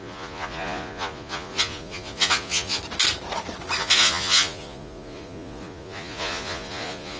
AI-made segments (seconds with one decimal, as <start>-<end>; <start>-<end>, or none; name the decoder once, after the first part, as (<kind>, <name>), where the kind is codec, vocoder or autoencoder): 0.0-2.8 (vocoder, Vocos); 3.8-7.2